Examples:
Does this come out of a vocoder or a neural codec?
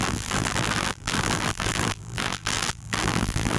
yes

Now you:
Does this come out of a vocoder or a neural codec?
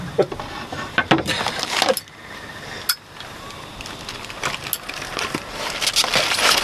no